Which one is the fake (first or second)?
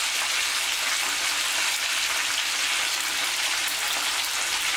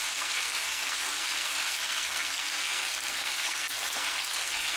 second